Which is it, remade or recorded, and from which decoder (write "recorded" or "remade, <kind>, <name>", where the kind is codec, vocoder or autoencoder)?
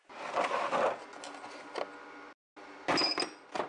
recorded